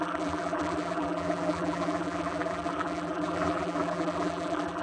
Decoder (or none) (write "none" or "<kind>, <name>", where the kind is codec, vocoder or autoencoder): vocoder, BigVGAN v2